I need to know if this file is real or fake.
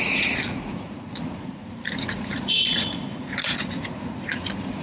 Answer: fake